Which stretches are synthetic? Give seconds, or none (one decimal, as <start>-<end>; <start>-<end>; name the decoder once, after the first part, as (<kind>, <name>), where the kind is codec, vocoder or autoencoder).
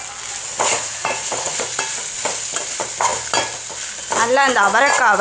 0.5-1.8 (vocoder, Vocos)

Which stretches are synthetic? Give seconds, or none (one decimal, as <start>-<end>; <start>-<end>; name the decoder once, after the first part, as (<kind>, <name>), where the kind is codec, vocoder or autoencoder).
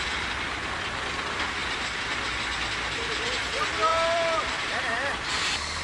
3.9-5.8 (vocoder, BigVGAN v2)